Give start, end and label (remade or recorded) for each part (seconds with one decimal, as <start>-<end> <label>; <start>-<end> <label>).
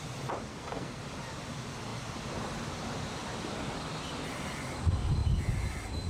0.0-0.5 recorded; 0.5-1.0 remade; 1.0-6.1 recorded